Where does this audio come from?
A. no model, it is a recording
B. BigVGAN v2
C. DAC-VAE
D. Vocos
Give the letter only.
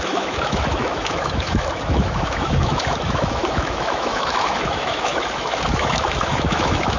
C